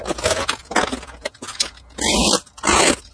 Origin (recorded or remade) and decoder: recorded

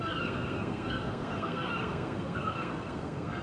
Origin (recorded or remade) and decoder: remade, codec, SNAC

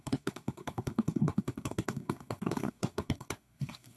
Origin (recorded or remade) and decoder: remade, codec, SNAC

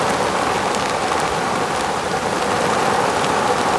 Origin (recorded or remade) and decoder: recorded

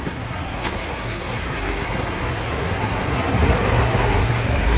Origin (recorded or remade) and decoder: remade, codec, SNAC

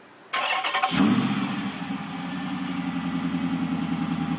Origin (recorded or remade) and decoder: recorded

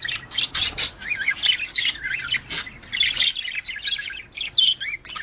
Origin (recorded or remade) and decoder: recorded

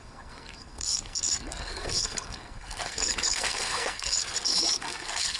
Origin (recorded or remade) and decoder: remade, codec, SNAC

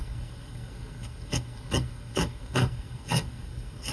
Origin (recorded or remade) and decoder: remade, codec, SNAC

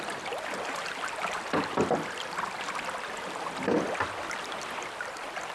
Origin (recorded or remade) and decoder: recorded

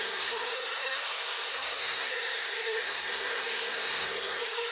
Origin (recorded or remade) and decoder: remade, codec, SNAC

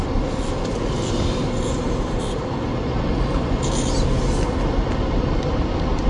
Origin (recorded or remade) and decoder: recorded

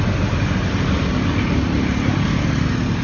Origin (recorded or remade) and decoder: recorded